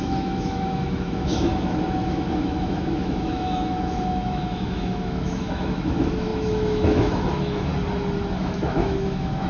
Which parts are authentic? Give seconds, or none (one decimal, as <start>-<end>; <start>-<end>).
7.7-8.4